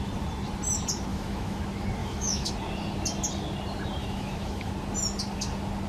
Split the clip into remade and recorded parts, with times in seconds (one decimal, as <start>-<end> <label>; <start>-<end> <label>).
0.0-1.1 recorded; 1.1-1.6 remade; 1.6-2.0 recorded; 2.0-2.5 remade; 2.5-4.0 recorded; 4.0-4.7 remade; 4.7-5.9 recorded